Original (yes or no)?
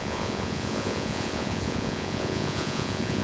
no